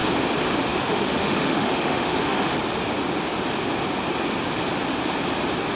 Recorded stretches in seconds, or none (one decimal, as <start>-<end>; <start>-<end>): 0.0-0.5; 2.5-5.8

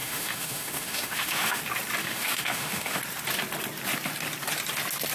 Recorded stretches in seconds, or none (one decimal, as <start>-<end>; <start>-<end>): 1.6-2.0; 3.0-5.1

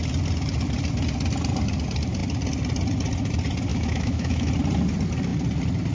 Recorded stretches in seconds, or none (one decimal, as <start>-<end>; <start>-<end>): 0.0-3.7; 4.5-5.9

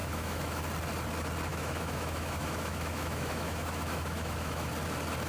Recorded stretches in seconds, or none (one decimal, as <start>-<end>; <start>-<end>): 0.6-1.5; 4.7-5.3

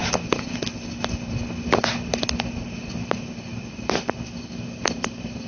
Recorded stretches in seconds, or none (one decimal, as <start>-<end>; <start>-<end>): 0.0-5.5

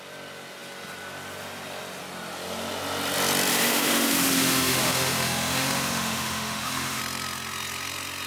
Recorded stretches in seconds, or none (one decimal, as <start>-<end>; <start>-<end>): 0.0-3.5; 7.0-8.3

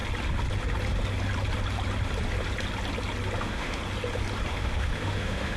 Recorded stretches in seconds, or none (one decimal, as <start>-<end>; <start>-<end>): 0.0-3.4; 3.8-4.5

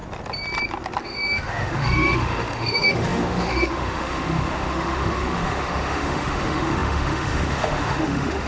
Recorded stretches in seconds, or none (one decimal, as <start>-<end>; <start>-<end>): 0.0-1.0